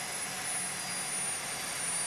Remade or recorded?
recorded